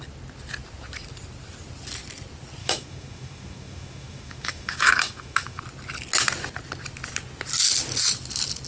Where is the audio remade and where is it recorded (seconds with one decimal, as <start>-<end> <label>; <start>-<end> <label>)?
0.0-2.6 recorded; 2.6-5.6 remade; 5.6-8.7 recorded

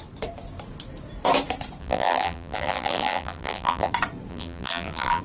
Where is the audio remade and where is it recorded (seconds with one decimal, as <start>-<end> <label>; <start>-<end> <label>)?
0.0-1.8 recorded; 1.8-3.9 remade; 3.9-4.3 recorded; 4.3-5.2 remade

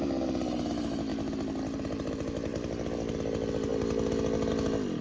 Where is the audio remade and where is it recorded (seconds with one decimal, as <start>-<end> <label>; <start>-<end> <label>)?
0.0-5.0 recorded